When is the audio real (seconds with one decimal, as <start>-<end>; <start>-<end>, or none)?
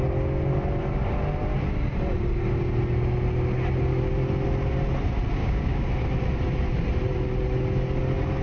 0.0-5.4; 5.9-8.4